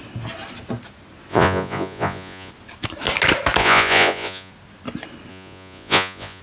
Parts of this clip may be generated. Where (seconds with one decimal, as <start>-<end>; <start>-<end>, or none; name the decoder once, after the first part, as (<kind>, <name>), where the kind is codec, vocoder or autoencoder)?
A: 1.3-2.5 (vocoder, Vocos); 3.6-4.5; 5.3-6.4